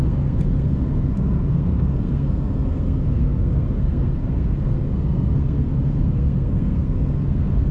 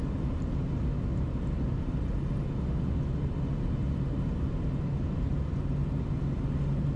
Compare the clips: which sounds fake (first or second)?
first